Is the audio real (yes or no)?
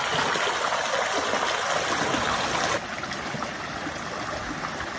yes